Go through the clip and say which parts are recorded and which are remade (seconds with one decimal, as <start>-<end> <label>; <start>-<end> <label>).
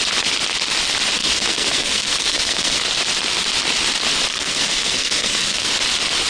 0.0-1.2 recorded; 1.2-2.8 remade; 2.8-4.3 recorded; 4.3-5.7 remade; 5.7-6.3 recorded